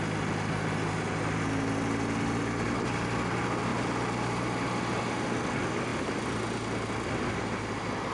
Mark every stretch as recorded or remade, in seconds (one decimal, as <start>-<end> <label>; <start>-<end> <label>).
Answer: 0.0-8.1 recorded